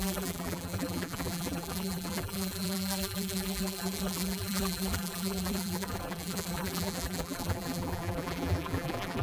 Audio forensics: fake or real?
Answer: fake